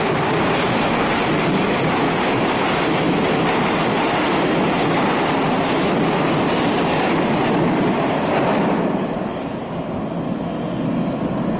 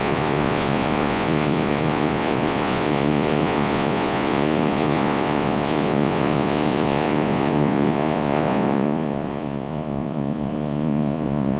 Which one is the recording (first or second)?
first